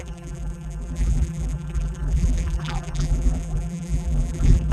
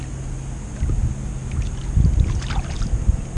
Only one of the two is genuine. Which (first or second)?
second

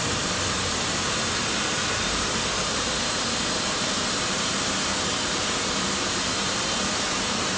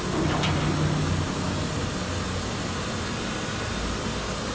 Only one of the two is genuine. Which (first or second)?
second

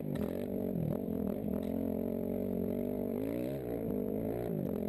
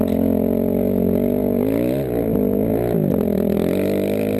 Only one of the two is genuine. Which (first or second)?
second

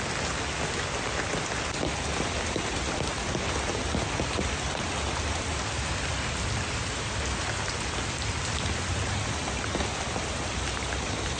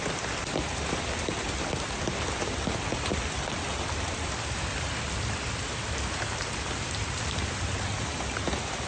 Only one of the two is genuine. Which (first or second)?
first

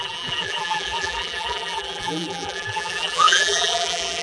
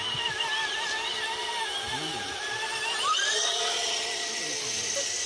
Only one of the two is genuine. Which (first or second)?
second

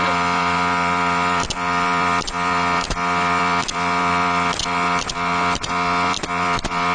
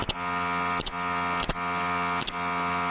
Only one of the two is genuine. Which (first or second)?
second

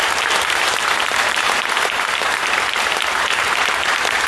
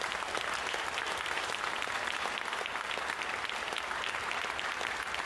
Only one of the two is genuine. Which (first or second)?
second